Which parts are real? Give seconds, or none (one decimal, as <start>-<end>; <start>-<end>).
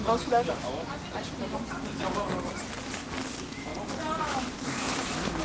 0.9-3.3; 3.7-4.2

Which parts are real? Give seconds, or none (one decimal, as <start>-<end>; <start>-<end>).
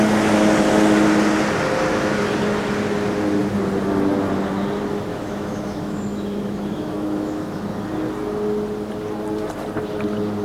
0.0-5.1; 7.7-10.4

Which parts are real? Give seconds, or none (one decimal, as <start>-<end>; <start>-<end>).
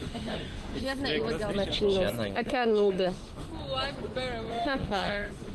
1.0-2.3; 3.5-4.5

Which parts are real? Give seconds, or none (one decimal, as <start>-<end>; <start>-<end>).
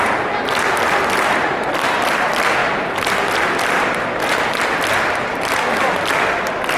0.0-6.8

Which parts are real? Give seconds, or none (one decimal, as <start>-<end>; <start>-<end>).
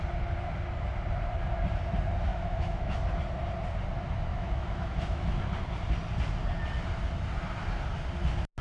0.0-2.3; 3.0-4.3; 5.4-8.6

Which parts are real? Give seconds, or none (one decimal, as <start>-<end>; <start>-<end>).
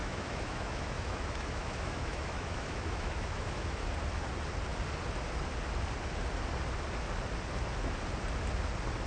3.9-9.1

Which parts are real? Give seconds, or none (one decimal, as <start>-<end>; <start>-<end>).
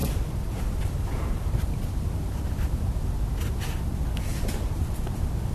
0.0-5.5